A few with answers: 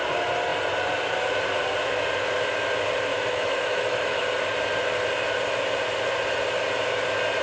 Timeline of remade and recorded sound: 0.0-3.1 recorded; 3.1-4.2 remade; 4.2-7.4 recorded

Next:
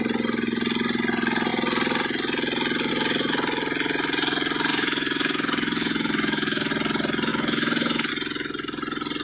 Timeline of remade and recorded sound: 0.0-4.7 recorded; 4.7-6.7 remade; 6.7-7.3 recorded; 7.3-8.1 remade; 8.1-9.2 recorded

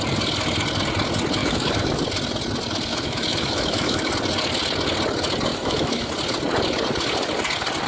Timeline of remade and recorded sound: 0.0-1.4 recorded; 1.4-2.0 remade; 2.0-2.9 recorded; 2.9-4.1 remade; 4.1-5.5 recorded; 5.5-6.1 remade; 6.1-7.9 recorded

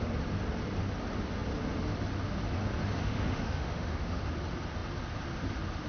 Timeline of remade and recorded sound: 0.0-3.0 recorded; 3.0-4.2 remade; 4.2-5.9 recorded

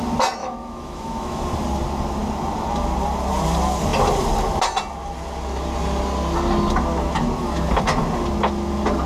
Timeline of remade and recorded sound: 0.0-0.4 recorded; 0.4-1.4 remade; 1.4-9.1 recorded

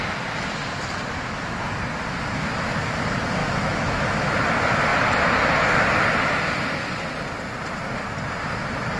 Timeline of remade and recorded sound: 0.0-3.4 recorded; 3.4-4.3 remade; 4.3-9.0 recorded